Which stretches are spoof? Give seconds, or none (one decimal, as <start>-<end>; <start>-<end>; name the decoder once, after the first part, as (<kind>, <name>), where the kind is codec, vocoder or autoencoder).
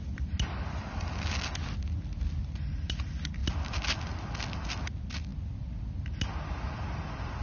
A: none